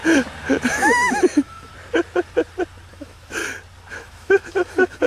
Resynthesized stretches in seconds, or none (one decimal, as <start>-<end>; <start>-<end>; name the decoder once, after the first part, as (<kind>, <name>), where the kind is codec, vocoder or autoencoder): 0.7-1.7 (autoencoder, DAC-VAE); 2.9-3.4; 3.9-5.1